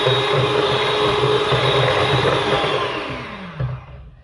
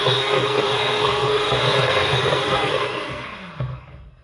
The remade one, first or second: second